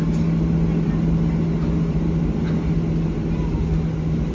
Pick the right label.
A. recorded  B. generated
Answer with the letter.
A